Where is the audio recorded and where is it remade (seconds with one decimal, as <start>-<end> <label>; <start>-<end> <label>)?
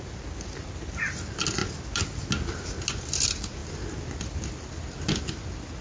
0.0-5.8 recorded